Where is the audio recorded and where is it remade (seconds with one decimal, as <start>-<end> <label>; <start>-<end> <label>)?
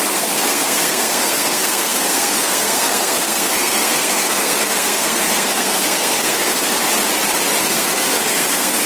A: 0.0-6.8 remade; 6.8-7.6 recorded; 7.6-8.9 remade